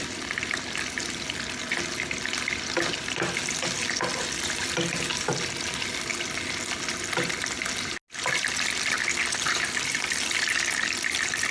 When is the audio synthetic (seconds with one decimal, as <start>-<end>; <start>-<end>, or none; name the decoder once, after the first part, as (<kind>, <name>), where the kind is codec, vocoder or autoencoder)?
none